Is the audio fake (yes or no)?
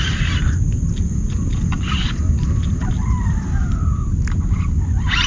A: no